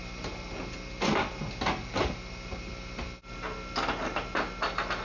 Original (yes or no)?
yes